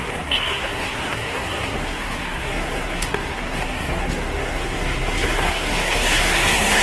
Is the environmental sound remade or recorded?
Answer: remade